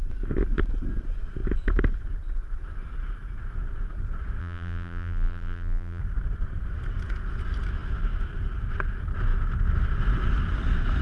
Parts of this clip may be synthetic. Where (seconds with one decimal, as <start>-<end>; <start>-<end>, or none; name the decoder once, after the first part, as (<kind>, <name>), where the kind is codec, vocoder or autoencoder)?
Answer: 4.4-6.0 (vocoder, BigVGAN v2)